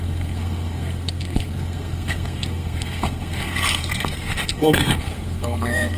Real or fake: fake